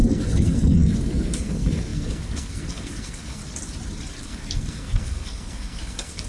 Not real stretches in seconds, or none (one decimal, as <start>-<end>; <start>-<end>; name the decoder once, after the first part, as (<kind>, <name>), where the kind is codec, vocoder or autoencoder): 0.0-3.4 (codec, SNAC); 4.2-6.3